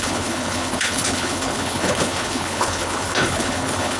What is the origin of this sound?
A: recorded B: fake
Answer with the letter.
B